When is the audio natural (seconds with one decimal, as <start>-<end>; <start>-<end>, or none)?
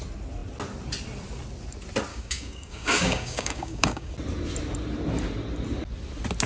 0.0-2.1; 4.1-6.5